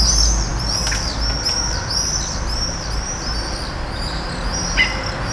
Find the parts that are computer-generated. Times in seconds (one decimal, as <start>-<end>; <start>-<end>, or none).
none